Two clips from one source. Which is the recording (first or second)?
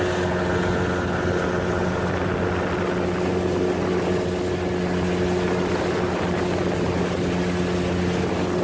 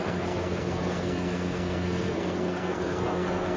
first